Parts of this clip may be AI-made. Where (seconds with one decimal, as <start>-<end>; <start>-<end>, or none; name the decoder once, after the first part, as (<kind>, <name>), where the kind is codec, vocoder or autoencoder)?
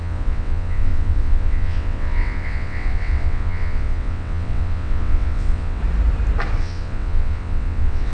0.0-5.8 (vocoder, WaveNeXt); 6.6-8.1